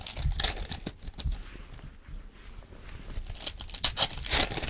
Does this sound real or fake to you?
real